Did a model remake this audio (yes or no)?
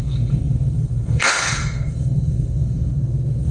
yes